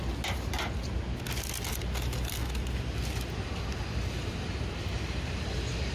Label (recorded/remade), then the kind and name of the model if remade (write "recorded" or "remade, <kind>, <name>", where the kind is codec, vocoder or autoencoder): recorded